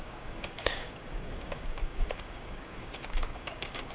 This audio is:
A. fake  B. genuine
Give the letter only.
A